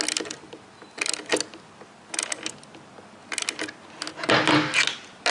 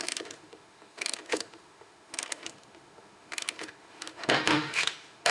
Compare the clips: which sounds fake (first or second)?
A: second